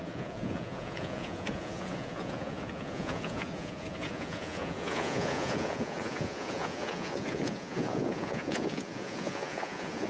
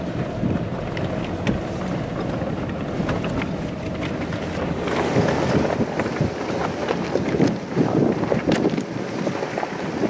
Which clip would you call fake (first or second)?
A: first